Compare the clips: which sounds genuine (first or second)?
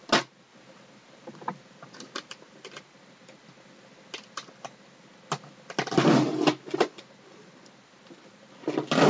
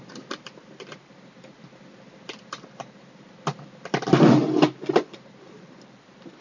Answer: first